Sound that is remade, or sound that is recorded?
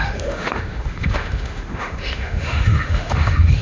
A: remade